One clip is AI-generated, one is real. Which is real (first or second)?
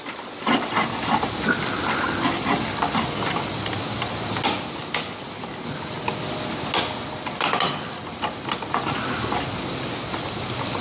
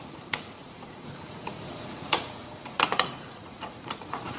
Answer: first